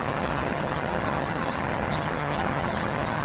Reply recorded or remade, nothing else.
remade